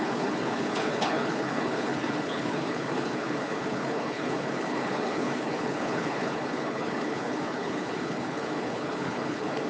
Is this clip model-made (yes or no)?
yes